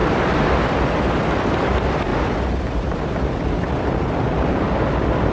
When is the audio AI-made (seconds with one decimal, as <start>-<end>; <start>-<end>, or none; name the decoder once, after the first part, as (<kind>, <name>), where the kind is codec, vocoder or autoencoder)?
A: 2.1-4.5 (vocoder, BigVGAN v2)